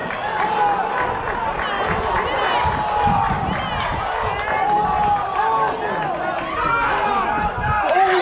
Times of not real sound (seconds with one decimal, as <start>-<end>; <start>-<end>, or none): none